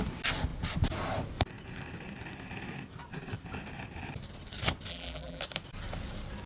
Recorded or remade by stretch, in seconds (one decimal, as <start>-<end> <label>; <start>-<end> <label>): 0.0-4.9 recorded; 4.9-5.4 remade; 5.4-6.5 recorded